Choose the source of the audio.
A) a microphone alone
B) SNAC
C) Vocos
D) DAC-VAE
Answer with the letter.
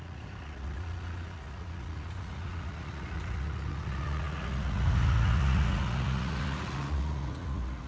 C